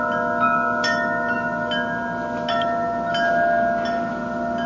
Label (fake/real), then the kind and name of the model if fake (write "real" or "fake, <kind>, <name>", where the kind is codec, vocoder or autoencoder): real